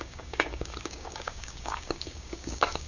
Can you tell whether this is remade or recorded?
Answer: remade